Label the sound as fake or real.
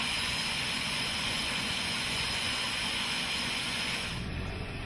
fake